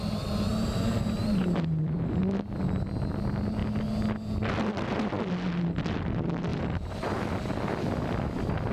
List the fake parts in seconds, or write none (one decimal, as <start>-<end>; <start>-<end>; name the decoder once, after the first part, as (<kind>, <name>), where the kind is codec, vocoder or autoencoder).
0.5-2.2 (vocoder, BigVGAN v2)